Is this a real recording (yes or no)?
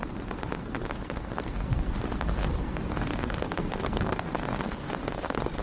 no